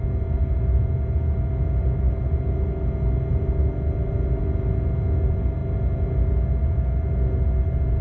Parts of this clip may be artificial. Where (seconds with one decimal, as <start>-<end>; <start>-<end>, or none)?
none